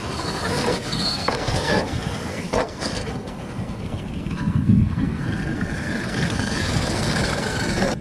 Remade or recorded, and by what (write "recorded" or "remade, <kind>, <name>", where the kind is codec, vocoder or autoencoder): remade, codec, SNAC